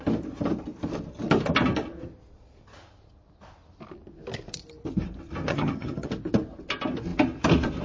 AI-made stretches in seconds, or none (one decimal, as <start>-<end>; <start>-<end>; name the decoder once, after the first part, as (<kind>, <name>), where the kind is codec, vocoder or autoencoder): 5.5-6.1 (vocoder, HiFi-GAN)